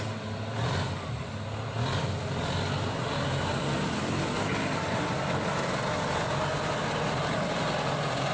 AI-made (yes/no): no